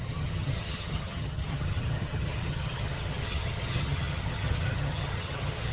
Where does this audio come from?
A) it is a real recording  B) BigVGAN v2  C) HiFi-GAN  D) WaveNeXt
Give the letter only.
C